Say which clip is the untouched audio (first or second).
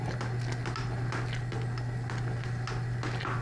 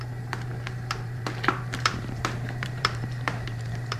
first